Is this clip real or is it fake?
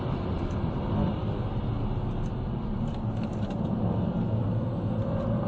real